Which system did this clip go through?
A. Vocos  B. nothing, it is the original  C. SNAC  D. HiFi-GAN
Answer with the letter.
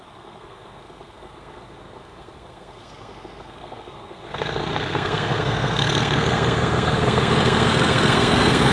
C